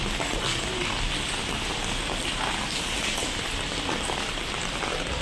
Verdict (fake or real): real